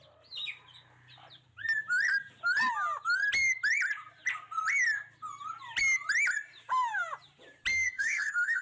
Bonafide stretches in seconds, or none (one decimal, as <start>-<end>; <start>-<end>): 0.0-7.7